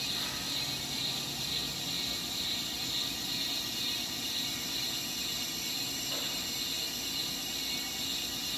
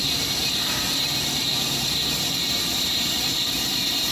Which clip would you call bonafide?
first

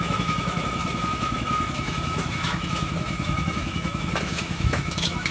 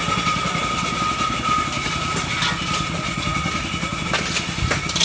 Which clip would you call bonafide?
second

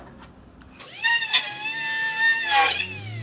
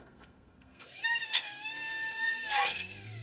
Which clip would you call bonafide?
first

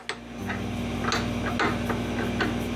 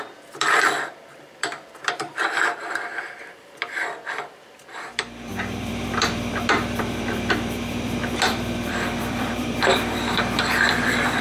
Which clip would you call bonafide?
first